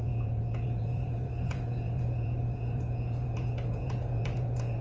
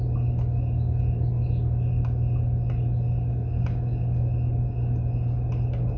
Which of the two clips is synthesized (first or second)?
first